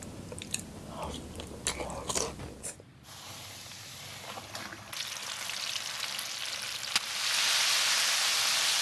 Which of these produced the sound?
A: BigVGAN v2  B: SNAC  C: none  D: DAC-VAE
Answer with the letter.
C